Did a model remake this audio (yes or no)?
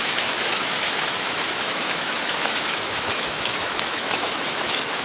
yes